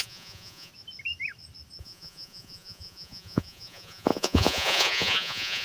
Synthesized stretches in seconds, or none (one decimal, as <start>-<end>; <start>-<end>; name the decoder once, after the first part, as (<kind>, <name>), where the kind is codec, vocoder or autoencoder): 0.0-0.7 (vocoder, Vocos); 1.8-5.6